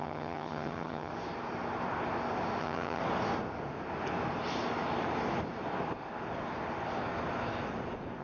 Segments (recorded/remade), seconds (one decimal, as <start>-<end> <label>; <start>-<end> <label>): 0.0-1.1 remade; 1.1-2.6 recorded; 2.6-3.0 remade; 3.0-8.2 recorded